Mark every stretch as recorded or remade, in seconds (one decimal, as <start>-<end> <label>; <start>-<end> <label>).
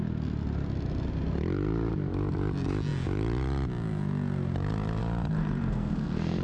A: 0.0-5.4 recorded; 5.4-6.4 remade